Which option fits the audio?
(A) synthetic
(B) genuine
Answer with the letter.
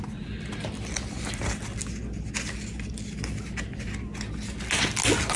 B